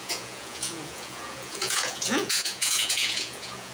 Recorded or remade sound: remade